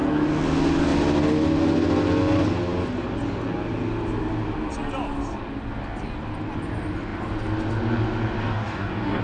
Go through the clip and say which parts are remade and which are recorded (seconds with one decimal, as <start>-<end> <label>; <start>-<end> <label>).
0.0-8.4 recorded; 8.4-9.2 remade